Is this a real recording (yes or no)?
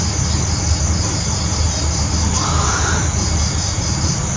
yes